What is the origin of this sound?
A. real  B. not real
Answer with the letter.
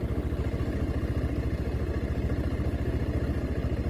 A